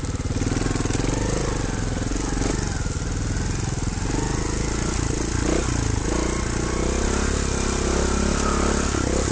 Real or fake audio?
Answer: real